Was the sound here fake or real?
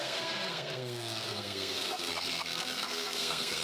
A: fake